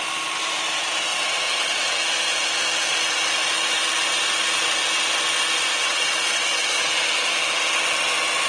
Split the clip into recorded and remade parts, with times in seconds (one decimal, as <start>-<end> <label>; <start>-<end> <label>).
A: 0.0-1.1 recorded; 1.1-1.8 remade; 1.8-5.7 recorded; 5.7-6.8 remade; 6.8-8.5 recorded